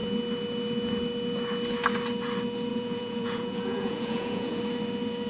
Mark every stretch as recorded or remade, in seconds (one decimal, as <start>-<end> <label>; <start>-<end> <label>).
0.0-2.7 recorded; 2.7-4.6 remade; 4.6-5.3 recorded